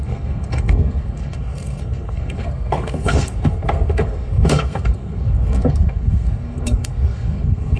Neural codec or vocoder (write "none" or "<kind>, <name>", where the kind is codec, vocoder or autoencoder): codec, SNAC